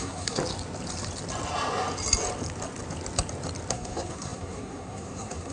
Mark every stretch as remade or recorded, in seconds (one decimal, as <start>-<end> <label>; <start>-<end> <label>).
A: 0.0-0.4 remade; 0.4-3.7 recorded; 3.7-5.5 remade